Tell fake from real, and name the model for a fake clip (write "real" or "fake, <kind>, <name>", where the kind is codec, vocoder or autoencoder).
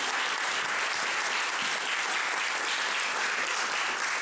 real